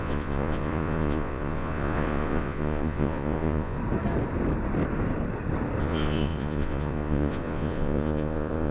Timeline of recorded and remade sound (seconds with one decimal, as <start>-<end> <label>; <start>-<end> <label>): 0.0-3.8 remade; 3.8-5.8 recorded; 5.8-8.7 remade